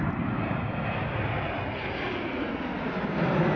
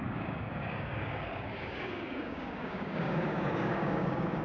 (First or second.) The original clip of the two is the first